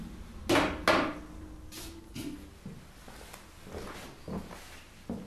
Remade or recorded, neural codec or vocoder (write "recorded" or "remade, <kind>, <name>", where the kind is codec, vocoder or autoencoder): recorded